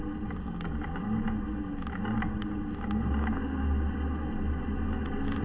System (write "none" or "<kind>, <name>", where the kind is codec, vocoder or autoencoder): none